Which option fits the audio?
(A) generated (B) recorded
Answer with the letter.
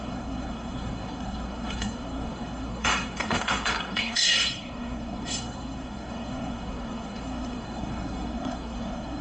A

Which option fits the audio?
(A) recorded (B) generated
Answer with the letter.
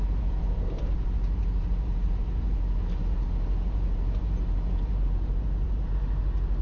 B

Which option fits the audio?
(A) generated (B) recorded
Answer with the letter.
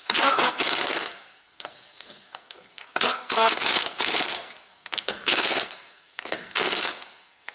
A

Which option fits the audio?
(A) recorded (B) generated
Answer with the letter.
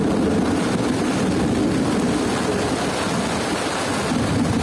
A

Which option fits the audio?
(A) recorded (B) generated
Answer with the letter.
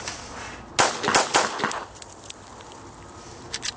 A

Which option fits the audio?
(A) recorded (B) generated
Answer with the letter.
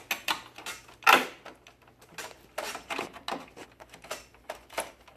A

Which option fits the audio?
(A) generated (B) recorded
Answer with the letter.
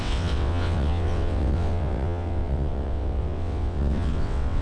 A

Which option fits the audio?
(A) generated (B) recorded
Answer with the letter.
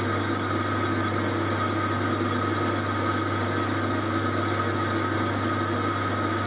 B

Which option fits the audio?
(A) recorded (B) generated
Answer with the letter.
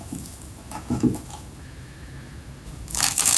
B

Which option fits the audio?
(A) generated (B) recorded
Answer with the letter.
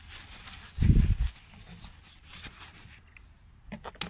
B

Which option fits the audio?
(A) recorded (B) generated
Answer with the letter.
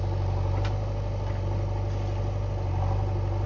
A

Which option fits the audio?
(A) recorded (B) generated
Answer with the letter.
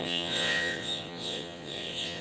B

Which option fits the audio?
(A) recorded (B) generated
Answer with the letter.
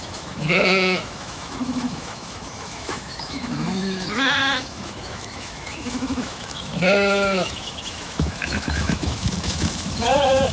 B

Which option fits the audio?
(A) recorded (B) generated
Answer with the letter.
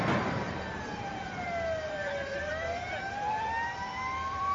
B